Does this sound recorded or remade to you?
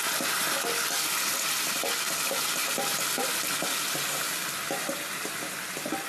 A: recorded